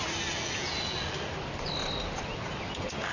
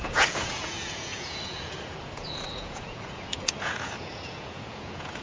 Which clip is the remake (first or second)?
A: second